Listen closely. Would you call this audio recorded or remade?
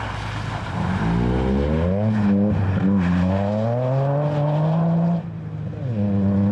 recorded